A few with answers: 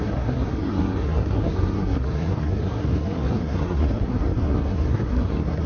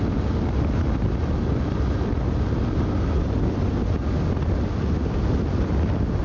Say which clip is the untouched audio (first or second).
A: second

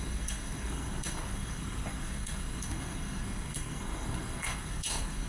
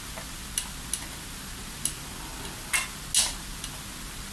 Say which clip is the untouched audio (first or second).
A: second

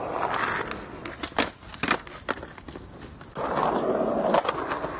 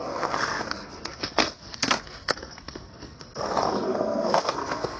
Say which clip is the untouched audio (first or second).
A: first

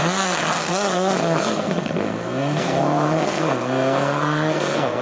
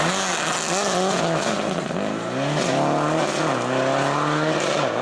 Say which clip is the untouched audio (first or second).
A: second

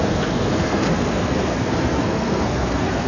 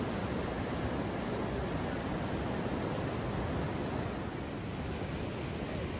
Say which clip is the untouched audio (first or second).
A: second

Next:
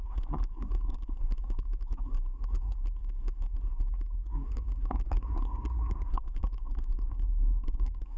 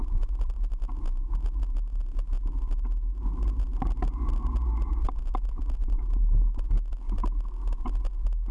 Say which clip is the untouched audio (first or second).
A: second